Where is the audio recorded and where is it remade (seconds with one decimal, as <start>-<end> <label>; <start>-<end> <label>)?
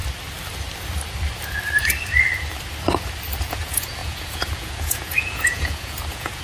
0.0-3.4 recorded; 3.4-6.4 remade